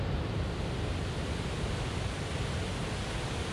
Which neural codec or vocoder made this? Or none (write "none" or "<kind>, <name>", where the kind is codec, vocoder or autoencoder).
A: none